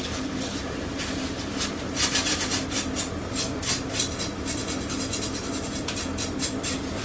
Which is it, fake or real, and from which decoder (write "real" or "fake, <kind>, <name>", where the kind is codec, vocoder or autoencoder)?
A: real